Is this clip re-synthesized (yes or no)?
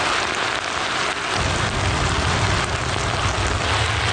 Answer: no